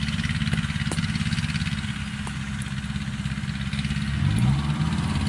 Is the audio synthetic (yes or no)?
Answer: no